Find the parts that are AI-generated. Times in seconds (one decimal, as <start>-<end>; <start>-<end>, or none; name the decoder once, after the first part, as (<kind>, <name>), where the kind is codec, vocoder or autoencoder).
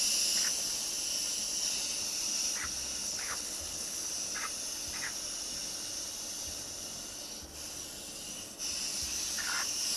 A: 3.0-4.1 (codec, HILCodec)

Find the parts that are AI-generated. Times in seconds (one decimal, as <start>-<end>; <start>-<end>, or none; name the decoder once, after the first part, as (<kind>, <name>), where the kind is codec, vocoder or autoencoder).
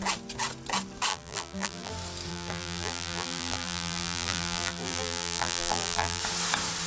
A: 1.1-1.9 (vocoder, BigVGAN v2); 2.3-6.2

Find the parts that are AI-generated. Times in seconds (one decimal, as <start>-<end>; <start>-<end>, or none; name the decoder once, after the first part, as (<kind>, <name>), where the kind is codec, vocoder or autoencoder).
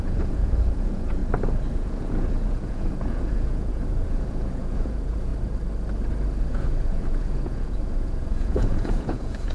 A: 0.0-1.2 (vocoder, Vocos); 1.7-5.3; 6.5-9.5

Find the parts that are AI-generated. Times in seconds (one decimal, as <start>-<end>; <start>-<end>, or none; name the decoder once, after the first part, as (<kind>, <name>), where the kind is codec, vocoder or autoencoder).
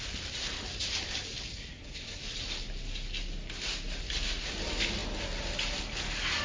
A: 1.5-2.2 (codec, SNAC)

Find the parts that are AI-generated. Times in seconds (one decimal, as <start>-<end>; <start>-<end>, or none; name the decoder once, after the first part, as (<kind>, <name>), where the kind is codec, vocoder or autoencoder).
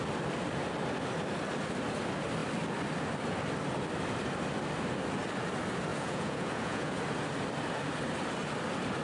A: 5.9-7.0 (vocoder, Vocos)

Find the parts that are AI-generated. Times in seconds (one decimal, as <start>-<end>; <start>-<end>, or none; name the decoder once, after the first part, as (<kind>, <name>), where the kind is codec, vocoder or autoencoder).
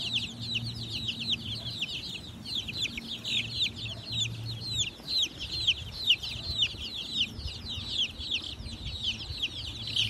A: none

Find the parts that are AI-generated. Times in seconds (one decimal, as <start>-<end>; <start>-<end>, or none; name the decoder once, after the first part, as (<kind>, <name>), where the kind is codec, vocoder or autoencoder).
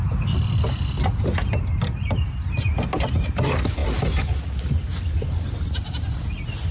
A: none